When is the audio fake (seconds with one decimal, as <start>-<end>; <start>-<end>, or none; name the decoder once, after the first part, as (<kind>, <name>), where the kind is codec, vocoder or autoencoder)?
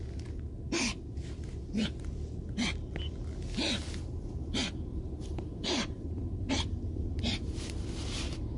3.6-4.3 (vocoder, BigVGAN v2); 4.9-6.5